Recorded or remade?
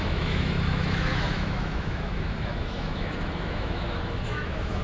remade